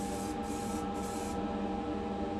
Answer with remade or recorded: recorded